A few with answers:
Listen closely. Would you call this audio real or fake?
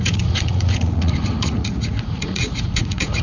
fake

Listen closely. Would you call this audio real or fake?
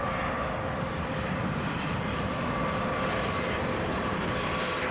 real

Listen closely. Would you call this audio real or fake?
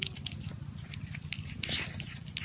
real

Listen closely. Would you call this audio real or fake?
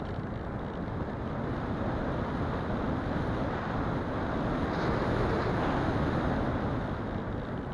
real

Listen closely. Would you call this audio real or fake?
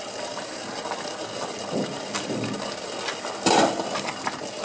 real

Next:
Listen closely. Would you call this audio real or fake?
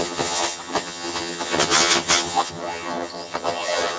fake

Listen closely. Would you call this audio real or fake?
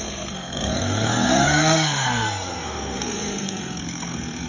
fake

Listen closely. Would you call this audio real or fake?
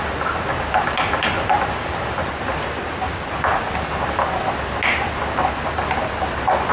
real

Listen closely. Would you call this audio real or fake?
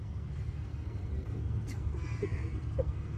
fake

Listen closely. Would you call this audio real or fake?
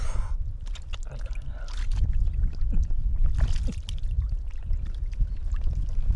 real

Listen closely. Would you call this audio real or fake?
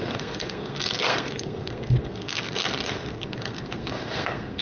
fake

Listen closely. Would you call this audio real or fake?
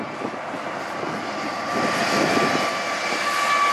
real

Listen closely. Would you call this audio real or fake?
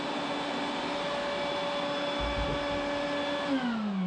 real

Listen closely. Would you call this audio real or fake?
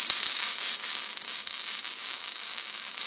fake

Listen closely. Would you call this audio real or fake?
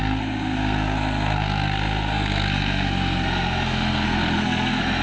fake